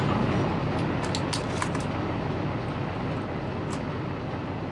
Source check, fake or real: real